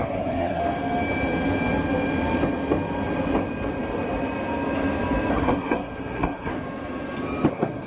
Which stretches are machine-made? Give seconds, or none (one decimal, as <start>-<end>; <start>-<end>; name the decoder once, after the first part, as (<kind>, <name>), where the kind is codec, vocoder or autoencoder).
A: 0.0-0.6 (codec, SNAC); 5.3-6.5; 7.5-7.9